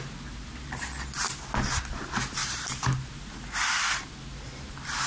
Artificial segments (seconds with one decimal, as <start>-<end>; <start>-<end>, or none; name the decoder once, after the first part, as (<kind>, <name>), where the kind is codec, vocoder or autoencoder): 2.4-4.1 (vocoder, BigVGAN v2)